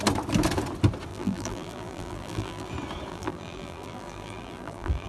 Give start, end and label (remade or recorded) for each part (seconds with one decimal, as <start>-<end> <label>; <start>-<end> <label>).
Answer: 0.0-1.1 recorded; 1.1-2.7 remade; 2.7-3.1 recorded; 3.1-5.1 remade